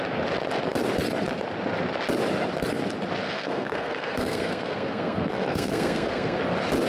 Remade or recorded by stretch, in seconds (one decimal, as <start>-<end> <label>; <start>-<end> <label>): 0.0-3.2 recorded; 3.2-6.4 remade; 6.4-6.9 recorded